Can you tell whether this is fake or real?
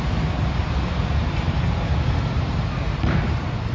real